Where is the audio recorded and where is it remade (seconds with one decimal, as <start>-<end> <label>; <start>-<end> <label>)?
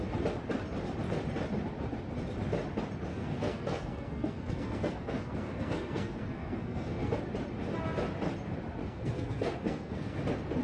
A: 0.0-3.1 recorded; 3.1-7.2 remade; 7.2-8.8 recorded; 8.8-10.2 remade; 10.2-10.6 recorded